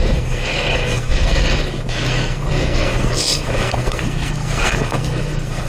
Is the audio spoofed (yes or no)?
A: yes